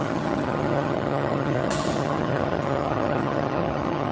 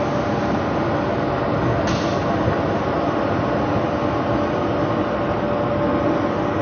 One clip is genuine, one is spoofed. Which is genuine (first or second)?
second